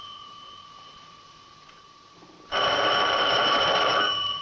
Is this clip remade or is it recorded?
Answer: remade